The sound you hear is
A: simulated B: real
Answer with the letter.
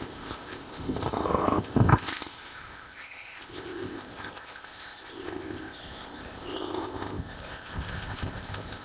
A